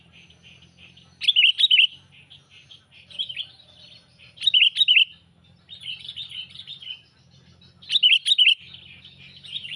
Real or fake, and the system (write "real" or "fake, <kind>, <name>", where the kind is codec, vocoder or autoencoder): real